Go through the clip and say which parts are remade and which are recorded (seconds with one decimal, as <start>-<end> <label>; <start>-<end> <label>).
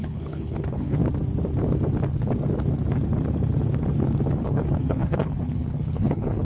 0.0-1.0 remade; 1.0-4.4 recorded; 4.4-6.4 remade